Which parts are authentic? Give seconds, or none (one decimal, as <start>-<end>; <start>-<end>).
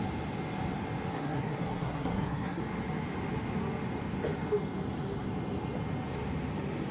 0.0-1.1; 2.6-6.9